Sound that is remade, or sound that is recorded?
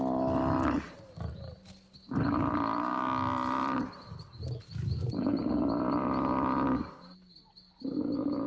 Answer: recorded